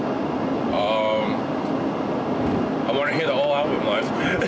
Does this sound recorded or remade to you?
recorded